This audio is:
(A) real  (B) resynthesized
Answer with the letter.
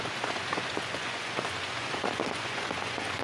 B